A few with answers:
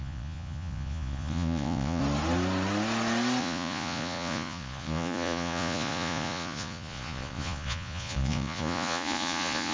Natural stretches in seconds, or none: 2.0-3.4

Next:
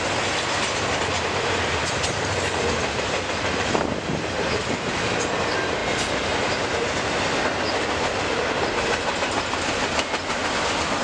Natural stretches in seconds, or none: 0.0-11.0

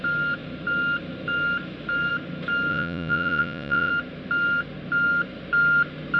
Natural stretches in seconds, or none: 0.0-2.7; 3.9-6.2

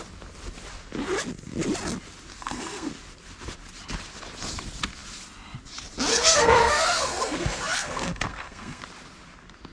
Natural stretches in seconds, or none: 0.0-2.3; 2.9-6.1; 8.8-9.7

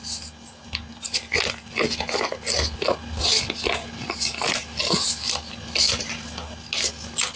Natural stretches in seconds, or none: 0.0-7.4

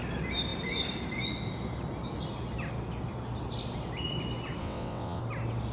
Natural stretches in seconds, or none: 0.0-4.6; 5.2-5.7

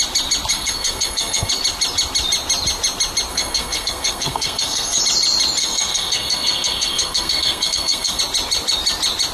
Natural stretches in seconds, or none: 0.0-0.5; 1.5-3.3; 5.0-5.6; 8.2-9.3

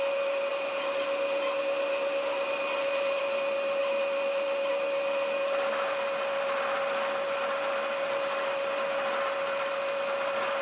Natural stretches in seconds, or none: 0.0-10.6